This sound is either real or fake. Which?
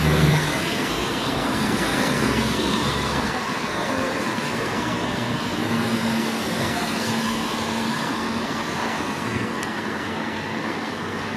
fake